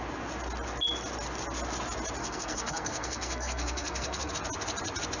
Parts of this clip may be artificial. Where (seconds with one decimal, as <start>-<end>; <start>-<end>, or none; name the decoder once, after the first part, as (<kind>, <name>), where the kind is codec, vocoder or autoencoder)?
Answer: 2.2-4.3 (codec, SNAC)